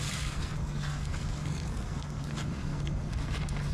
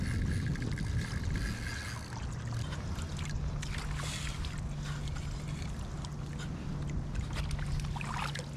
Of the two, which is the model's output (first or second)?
first